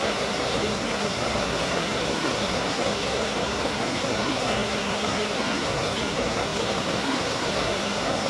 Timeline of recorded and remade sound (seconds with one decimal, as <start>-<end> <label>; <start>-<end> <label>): 0.0-8.3 remade